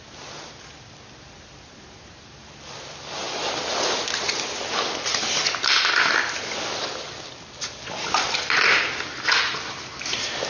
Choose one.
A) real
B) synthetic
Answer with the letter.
A